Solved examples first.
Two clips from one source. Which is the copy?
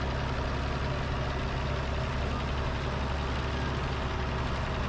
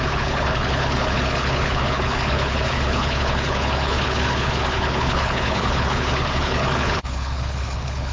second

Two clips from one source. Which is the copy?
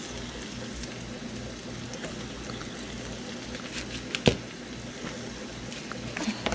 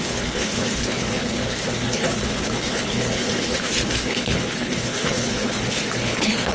second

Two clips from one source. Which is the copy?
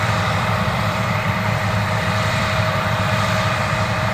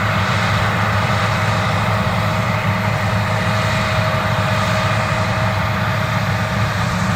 first